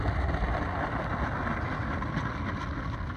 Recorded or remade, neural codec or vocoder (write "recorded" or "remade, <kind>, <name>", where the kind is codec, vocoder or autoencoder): recorded